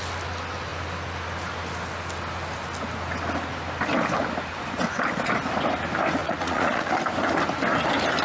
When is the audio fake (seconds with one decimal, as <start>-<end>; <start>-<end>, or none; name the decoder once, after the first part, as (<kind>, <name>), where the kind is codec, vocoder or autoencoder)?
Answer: 6.2-6.9 (vocoder, Vocos)